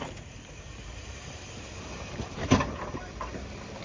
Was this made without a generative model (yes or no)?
no